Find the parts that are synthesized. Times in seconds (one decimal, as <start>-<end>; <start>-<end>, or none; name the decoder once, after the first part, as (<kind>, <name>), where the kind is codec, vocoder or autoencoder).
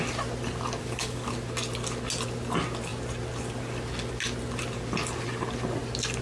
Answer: 0.8-1.3 (codec, DAC)